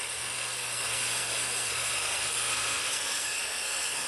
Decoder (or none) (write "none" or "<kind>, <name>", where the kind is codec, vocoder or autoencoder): codec, SNAC